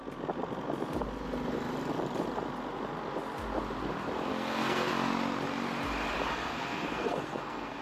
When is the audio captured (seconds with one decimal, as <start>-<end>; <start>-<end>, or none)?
0.0-4.3; 4.9-6.5